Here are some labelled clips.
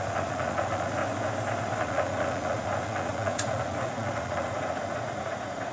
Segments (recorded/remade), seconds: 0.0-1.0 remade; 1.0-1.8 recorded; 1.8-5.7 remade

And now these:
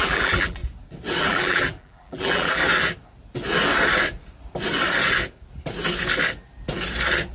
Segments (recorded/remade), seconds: 0.0-0.6 remade; 0.6-1.2 recorded; 1.2-2.6 remade; 2.6-7.3 recorded